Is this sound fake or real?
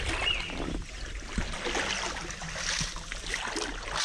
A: real